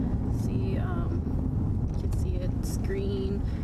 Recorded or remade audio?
recorded